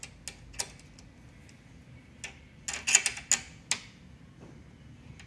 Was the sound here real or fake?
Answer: real